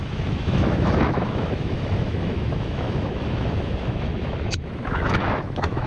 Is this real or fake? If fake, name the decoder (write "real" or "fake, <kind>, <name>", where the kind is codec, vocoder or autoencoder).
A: fake, autoencoder, DAC-VAE